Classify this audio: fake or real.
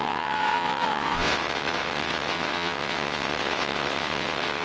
fake